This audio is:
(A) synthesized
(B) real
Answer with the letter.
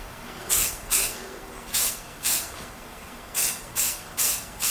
A